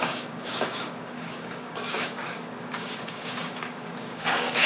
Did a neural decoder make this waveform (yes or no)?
yes